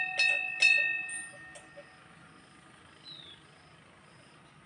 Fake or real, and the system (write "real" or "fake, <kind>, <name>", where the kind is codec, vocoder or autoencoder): real